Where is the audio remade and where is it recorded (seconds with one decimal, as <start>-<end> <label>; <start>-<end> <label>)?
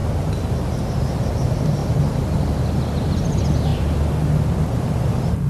0.0-1.8 recorded; 1.8-2.4 remade; 2.4-3.7 recorded; 3.7-5.5 remade